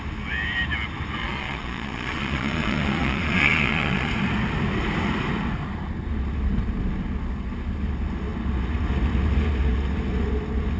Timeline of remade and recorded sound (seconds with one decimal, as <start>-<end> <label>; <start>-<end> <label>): 0.0-1.2 recorded; 1.2-4.1 remade; 4.1-10.8 recorded